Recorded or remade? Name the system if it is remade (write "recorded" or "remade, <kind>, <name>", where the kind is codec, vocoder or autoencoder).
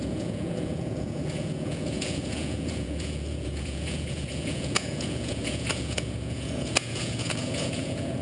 remade, vocoder, Vocos